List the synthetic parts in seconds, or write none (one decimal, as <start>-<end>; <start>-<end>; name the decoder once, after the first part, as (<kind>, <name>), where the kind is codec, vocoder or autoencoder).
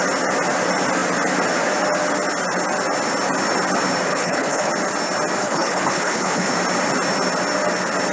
4.1-4.7 (codec, HILCodec); 5.4-6.5